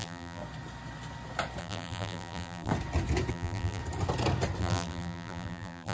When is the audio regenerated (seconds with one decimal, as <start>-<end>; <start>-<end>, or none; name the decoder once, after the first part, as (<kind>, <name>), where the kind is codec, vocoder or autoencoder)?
0.0-0.4 (vocoder, BigVGAN v2); 1.6-2.7; 3.3-3.8; 4.6-5.9